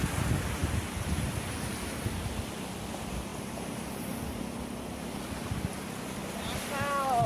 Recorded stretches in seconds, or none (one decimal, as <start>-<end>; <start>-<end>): 0.0-7.3